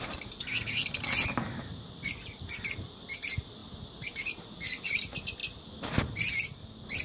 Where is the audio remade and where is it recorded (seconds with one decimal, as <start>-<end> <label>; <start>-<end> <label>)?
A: 0.0-7.0 recorded